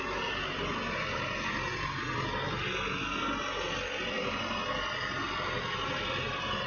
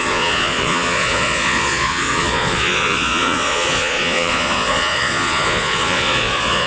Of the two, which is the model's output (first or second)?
second